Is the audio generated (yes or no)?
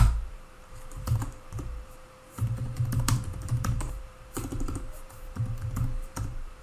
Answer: yes